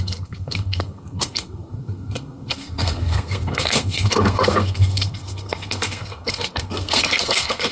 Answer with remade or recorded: remade